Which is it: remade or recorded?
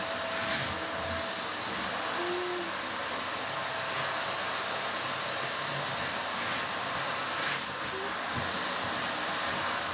recorded